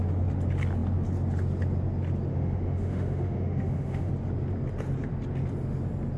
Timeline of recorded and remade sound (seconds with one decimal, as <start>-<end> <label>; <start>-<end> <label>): 0.0-2.3 recorded; 2.3-4.1 remade; 4.1-6.2 recorded